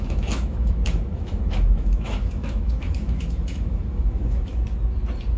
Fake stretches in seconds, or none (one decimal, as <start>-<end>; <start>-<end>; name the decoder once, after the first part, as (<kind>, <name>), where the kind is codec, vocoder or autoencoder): 0.0-4.5 (autoencoder, DAC-VAE)